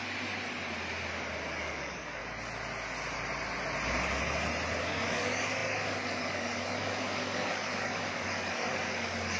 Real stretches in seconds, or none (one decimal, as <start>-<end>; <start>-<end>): 0.0-1.5; 2.2-4.8